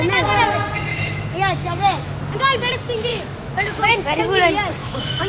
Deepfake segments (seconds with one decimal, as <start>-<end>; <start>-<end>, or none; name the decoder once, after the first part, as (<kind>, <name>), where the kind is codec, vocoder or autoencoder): 0.9-2.2 (autoencoder, DAC-VAE); 3.1-4.2; 4.8-5.3